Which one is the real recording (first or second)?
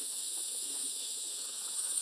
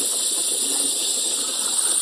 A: second